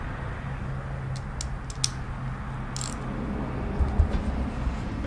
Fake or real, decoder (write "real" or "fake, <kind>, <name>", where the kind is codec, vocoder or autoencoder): real